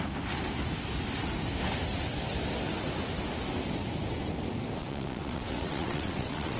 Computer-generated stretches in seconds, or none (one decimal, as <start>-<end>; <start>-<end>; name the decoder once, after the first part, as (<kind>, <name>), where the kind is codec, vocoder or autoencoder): 4.8-6.6 (vocoder, WaveNeXt)